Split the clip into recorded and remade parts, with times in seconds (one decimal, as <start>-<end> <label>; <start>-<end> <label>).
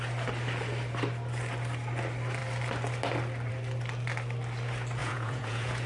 0.0-5.0 recorded; 5.0-5.9 remade